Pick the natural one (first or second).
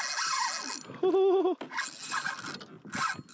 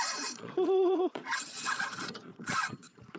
first